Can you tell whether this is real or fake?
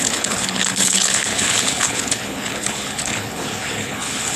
fake